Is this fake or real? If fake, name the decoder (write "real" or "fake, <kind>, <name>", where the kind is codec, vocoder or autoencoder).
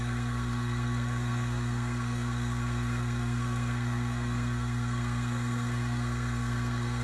fake, codec, SNAC